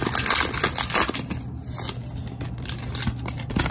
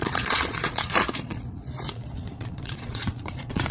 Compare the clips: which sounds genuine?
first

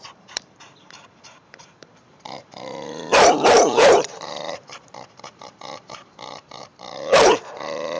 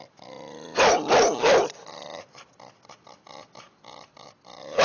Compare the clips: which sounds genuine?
second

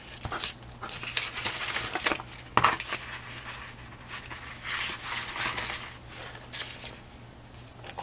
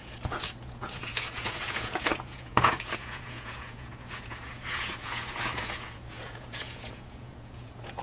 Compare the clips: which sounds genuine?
first